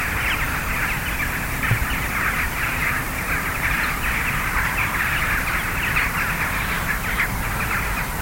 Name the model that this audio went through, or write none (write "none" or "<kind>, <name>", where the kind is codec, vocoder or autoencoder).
none